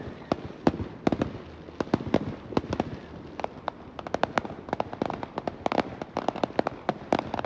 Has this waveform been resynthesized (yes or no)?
no